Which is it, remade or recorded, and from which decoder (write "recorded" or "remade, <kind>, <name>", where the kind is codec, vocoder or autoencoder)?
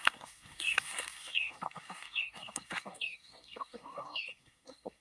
remade, codec, SNAC